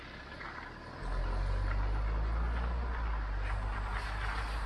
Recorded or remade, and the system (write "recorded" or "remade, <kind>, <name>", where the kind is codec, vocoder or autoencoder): recorded